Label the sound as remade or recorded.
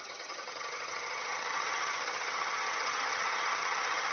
remade